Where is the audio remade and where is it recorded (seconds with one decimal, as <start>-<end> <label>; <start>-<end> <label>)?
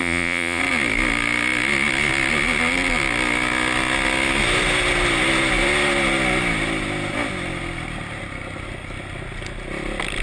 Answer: 0.0-0.6 remade; 0.6-10.2 recorded